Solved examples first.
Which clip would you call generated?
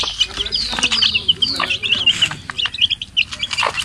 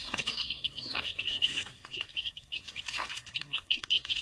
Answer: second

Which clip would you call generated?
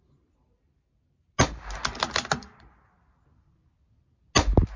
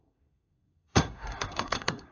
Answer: second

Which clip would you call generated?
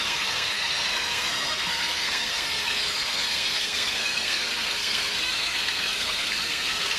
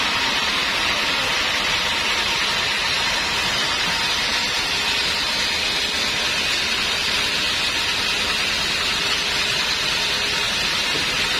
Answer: first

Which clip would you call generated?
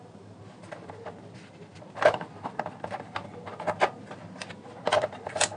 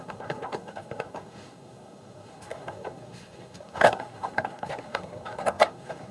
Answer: second